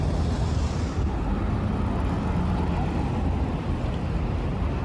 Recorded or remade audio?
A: recorded